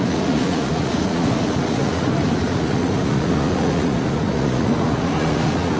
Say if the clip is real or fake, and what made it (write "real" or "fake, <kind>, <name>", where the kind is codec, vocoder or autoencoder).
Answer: fake, vocoder, Vocos